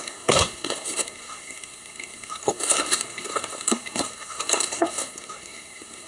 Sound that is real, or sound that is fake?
fake